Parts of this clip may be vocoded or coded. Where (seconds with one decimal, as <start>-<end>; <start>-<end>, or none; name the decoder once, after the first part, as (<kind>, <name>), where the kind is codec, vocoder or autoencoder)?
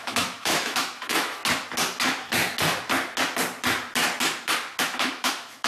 0.0-1.4 (autoencoder, DAC-VAE); 4.8-5.7